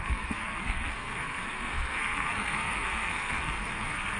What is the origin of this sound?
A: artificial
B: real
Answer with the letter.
A